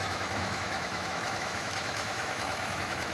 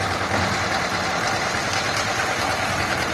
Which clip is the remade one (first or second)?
first